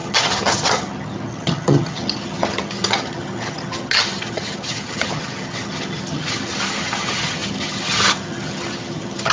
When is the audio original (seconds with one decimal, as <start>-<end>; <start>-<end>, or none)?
none